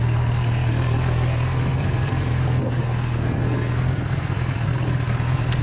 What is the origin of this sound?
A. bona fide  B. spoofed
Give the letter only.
B